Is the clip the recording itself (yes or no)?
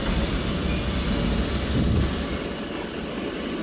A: yes